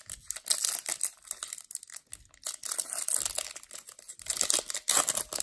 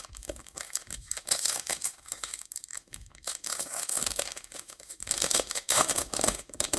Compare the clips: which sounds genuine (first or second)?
first